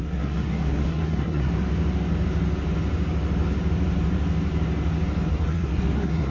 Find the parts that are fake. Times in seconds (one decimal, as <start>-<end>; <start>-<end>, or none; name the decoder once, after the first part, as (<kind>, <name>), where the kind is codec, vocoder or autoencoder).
0.0-1.5 (codec, SNAC); 5.3-6.3

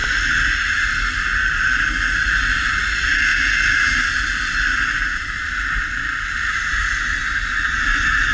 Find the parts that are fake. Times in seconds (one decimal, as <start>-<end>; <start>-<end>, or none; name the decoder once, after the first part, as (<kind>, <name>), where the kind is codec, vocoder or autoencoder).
none

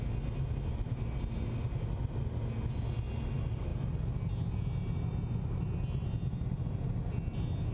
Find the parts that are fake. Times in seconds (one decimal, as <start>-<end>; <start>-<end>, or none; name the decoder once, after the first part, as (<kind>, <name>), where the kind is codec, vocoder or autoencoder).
none

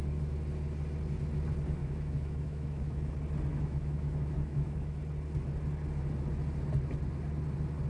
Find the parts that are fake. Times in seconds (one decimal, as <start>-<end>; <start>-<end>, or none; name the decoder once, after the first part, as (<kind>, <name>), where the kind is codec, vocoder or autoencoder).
1.8-3.1 (autoencoder, DAC-VAE); 3.5-5.0

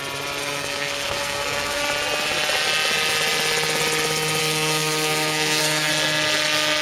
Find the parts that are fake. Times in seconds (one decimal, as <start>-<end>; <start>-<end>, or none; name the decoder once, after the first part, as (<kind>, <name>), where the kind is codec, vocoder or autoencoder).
0.4-1.8 (codec, SNAC); 4.4-5.9

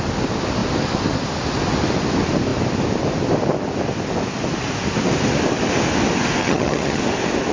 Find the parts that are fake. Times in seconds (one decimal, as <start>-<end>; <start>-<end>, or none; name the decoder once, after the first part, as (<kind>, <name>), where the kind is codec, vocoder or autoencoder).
6.4-7.0 (vocoder, HiFi-GAN)